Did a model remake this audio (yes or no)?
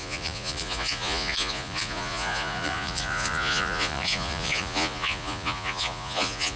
yes